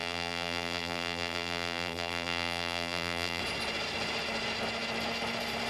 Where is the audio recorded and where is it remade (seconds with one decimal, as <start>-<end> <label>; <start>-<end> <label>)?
0.0-3.4 remade; 3.4-5.7 recorded